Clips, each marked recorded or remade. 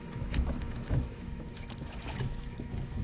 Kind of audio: remade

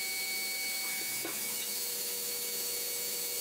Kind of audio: remade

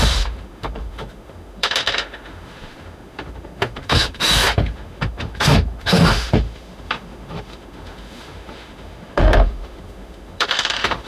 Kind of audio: remade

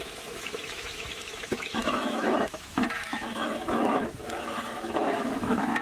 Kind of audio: remade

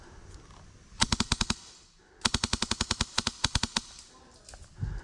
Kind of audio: recorded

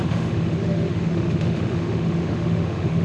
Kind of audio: remade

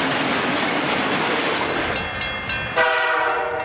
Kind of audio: recorded